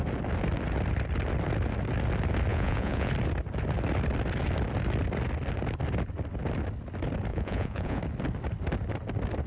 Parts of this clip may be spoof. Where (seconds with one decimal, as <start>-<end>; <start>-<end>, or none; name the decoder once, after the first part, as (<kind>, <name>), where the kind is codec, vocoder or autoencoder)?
2.5-3.1 (vocoder, Vocos); 7.3-8.0